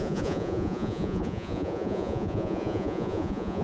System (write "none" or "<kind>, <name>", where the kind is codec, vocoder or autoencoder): vocoder, Vocos